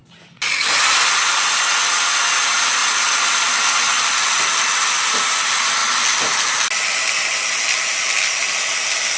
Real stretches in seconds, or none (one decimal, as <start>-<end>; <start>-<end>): 0.0-2.8; 5.1-9.2